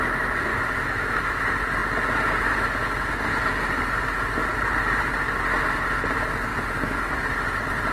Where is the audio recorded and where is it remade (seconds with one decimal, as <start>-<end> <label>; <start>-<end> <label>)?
0.0-0.5 recorded; 0.5-1.4 remade; 1.4-7.9 recorded